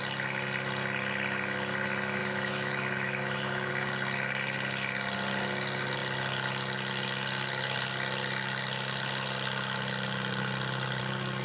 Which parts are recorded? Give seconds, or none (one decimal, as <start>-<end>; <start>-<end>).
0.0-2.2; 3.7-11.4